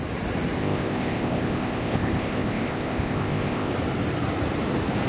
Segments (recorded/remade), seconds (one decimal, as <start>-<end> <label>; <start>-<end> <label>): 0.0-0.6 recorded; 0.6-3.7 remade; 3.7-5.1 recorded